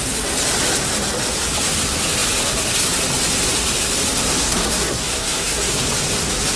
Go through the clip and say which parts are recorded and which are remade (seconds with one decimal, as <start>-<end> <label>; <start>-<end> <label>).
0.0-4.4 recorded; 4.4-5.8 remade; 5.8-6.6 recorded

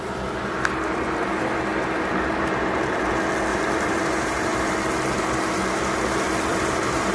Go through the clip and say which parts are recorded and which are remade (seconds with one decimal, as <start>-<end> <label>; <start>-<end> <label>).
0.0-3.5 recorded; 3.5-4.7 remade; 4.7-6.5 recorded; 6.5-7.1 remade

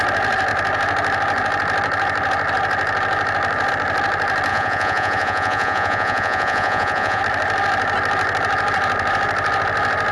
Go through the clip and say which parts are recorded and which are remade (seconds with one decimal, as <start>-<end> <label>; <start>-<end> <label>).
0.0-4.5 recorded; 4.5-7.2 remade; 7.2-10.1 recorded

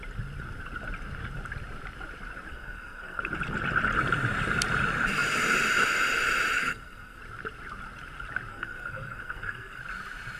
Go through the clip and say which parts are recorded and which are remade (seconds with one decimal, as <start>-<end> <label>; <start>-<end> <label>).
0.0-2.5 recorded; 2.5-3.2 remade; 3.2-6.6 recorded; 6.6-7.2 remade; 7.2-8.5 recorded; 8.5-9.8 remade; 9.8-10.4 recorded

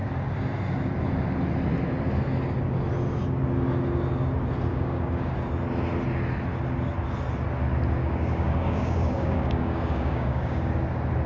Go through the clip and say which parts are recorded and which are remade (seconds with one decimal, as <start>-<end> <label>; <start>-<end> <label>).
0.0-4.7 recorded; 4.7-5.3 remade; 5.3-8.0 recorded; 8.0-10.7 remade; 10.7-11.3 recorded